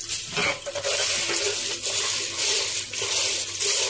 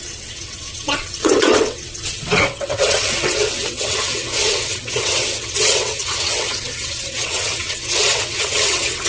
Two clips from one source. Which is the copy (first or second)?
second